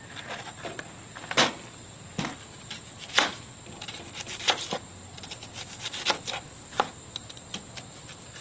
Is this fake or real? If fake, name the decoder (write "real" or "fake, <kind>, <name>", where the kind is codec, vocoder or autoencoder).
real